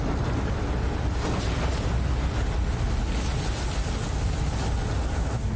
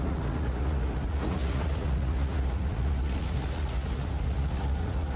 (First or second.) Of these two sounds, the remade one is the second